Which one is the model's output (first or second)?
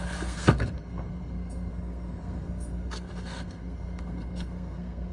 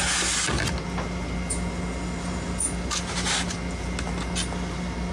first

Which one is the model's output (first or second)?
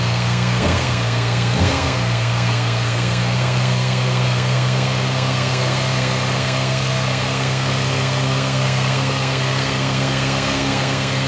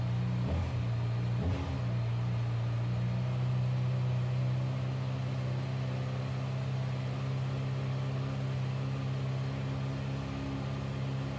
first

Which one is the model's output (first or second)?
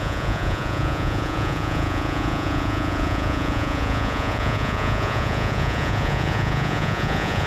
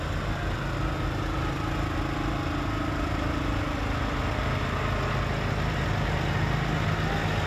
first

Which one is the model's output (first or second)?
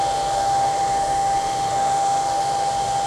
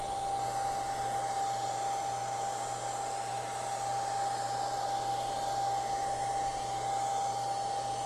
first